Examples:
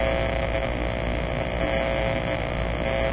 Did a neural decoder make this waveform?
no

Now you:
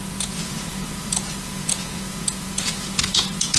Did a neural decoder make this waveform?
yes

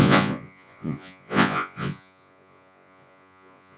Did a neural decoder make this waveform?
yes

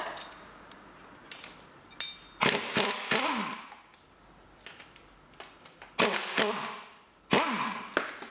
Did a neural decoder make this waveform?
no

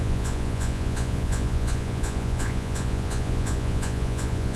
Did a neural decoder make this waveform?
yes